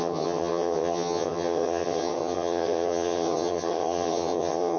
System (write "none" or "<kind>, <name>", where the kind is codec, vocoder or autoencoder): vocoder, HiFi-GAN